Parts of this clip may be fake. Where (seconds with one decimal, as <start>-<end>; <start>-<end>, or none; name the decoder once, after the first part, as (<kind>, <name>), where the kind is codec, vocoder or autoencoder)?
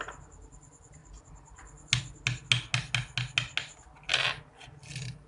none